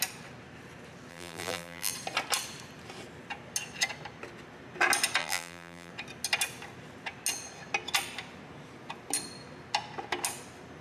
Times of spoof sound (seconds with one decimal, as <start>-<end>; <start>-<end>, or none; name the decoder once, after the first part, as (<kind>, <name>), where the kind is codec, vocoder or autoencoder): 1.1-1.9 (vocoder, BigVGAN v2); 5.2-5.9